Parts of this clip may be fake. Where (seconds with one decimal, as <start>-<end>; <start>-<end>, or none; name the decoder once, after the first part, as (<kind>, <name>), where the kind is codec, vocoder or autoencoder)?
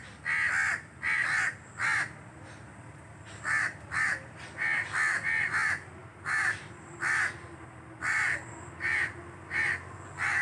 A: 6.1-7.0 (vocoder, BigVGAN v2)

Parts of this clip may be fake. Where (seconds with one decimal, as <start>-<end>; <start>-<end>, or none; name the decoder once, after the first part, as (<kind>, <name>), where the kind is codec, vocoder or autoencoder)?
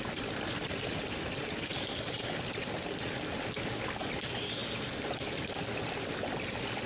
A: none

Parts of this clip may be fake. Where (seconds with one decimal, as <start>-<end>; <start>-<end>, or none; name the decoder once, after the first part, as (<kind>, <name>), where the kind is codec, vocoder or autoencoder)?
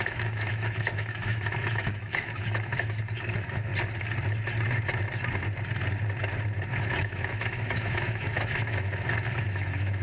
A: 0.0-3.7 (autoencoder, DAC-VAE); 6.8-10.0